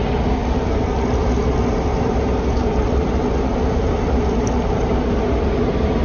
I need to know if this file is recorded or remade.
recorded